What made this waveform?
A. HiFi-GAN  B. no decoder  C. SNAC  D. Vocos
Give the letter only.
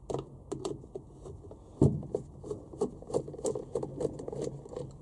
B